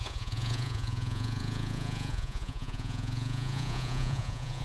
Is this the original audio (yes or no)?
no